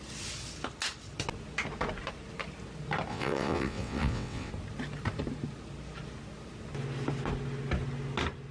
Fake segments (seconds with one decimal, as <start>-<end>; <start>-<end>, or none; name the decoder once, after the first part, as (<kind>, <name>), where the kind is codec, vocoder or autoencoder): 3.1-4.5 (vocoder, WaveNeXt)